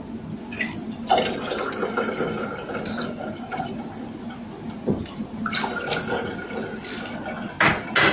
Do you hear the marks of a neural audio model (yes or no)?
no